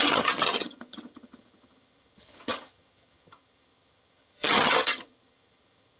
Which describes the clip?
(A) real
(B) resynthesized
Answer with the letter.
B